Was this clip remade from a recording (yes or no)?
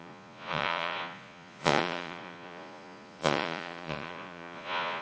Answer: yes